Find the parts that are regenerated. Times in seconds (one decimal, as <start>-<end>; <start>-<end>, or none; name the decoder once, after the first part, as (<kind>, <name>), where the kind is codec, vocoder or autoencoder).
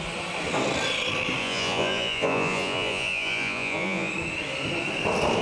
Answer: 1.4-4.1 (vocoder, Vocos)